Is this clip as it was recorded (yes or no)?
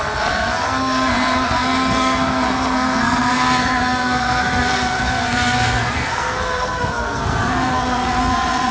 no